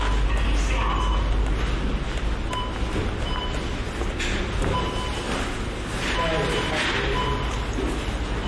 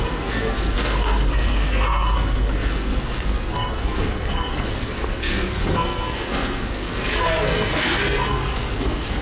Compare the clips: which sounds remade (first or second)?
second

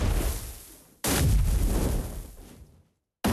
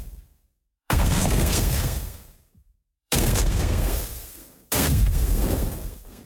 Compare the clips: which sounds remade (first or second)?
second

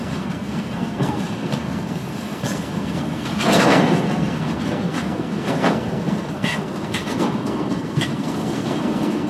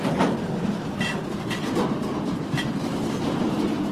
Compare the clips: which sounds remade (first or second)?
first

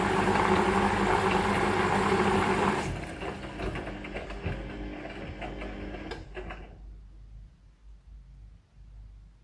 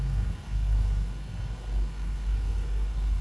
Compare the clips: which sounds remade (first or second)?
second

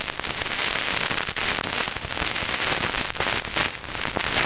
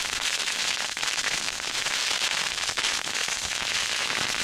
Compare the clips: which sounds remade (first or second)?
second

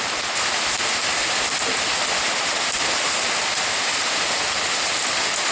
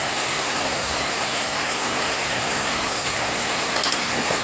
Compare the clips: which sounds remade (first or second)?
second